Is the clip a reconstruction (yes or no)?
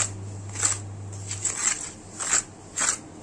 no